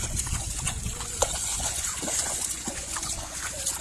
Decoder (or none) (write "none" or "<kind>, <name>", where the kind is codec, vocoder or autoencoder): vocoder, Vocos